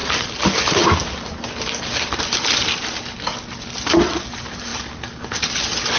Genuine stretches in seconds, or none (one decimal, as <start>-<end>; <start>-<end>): 0.0-6.0